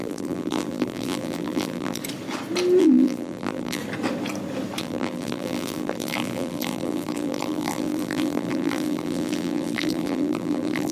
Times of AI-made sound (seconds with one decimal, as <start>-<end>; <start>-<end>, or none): 0.0-2.0; 2.8-3.8; 4.8-10.9